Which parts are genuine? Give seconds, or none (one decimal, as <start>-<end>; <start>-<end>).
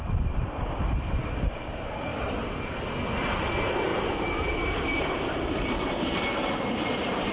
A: 2.1-3.5